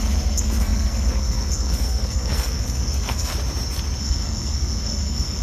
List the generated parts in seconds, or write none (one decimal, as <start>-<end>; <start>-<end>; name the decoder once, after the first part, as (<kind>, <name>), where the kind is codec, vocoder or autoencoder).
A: 0.0-3.3 (codec, SNAC); 4.0-5.4